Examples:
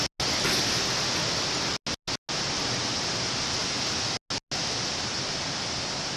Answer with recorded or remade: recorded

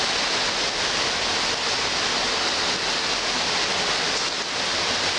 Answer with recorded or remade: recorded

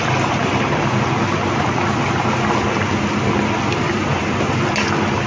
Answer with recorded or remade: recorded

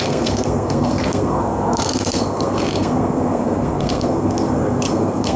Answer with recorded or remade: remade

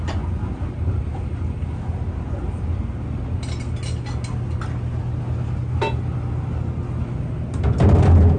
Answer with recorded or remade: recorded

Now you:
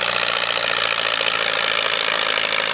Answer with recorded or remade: recorded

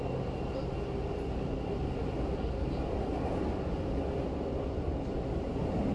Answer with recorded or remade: recorded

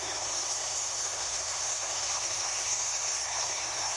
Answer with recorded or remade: remade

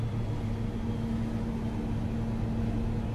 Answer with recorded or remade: recorded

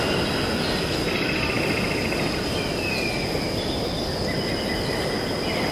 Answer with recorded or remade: recorded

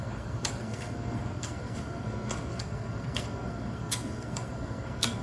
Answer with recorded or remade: remade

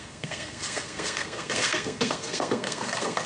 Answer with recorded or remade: remade